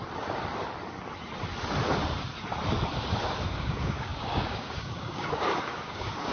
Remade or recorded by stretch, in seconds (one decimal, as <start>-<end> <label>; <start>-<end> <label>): 0.0-3.5 recorded; 3.5-6.3 remade